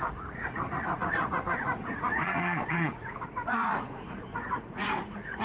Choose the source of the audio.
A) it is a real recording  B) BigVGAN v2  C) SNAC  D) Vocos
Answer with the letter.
D